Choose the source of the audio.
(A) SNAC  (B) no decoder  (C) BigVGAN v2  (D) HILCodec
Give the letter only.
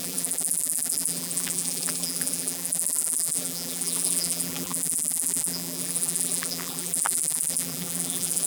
C